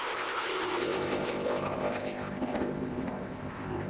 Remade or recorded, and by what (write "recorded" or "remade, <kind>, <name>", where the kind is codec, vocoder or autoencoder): remade, codec, ZipCodec